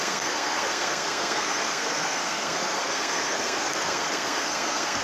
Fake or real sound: fake